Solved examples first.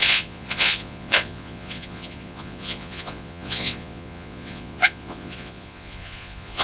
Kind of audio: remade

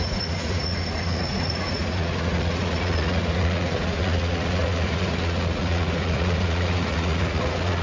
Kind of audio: remade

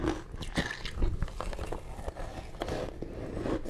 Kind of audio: recorded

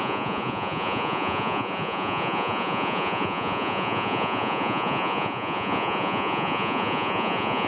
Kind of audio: remade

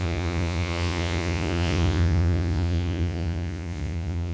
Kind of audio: remade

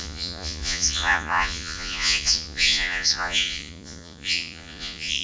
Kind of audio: remade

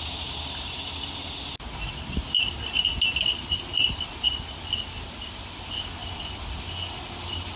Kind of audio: recorded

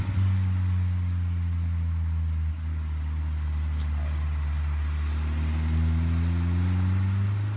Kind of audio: recorded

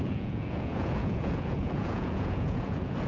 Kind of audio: remade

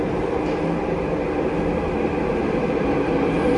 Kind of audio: recorded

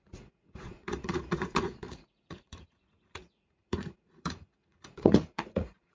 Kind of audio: remade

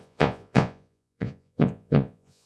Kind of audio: remade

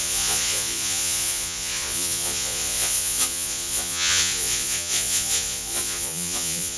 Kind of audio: remade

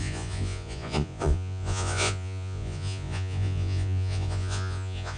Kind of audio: remade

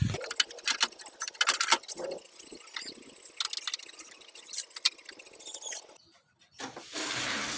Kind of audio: recorded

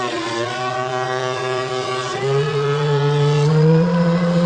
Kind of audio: remade